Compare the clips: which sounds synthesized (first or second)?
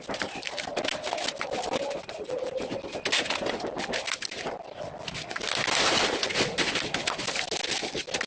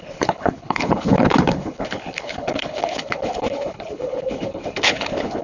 second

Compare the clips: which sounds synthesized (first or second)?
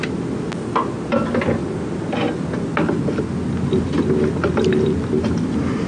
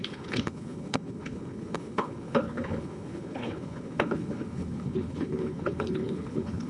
second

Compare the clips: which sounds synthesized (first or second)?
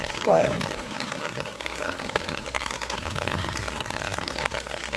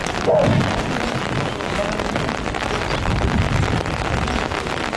first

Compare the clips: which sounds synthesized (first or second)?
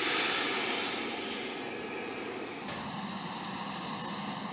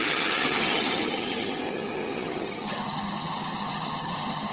second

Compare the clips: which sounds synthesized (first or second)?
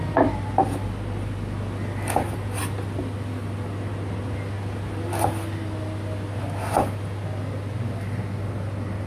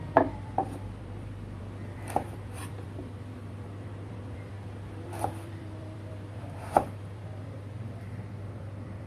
second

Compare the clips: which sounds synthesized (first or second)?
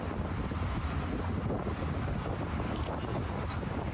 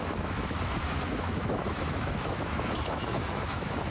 second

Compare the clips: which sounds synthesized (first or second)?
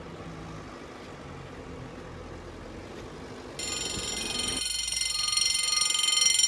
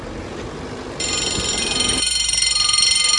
second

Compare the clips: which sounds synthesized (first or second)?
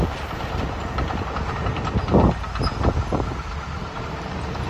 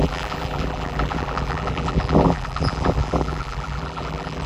second